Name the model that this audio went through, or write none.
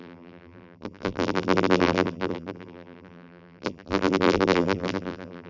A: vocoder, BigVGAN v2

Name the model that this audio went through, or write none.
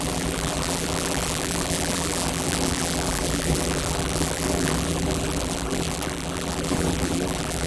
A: vocoder, BigVGAN v2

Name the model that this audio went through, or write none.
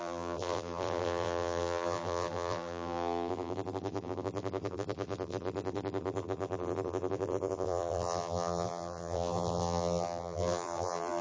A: vocoder, BigVGAN v2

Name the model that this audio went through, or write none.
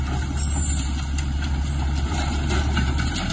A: vocoder, BigVGAN v2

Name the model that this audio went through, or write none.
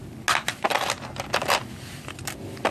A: none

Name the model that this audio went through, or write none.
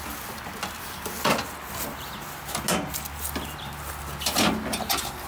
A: none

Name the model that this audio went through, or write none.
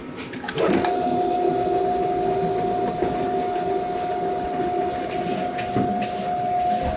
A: none